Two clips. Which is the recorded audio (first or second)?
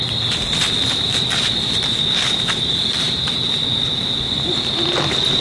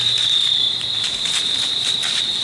first